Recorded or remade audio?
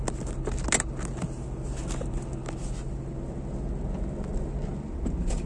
recorded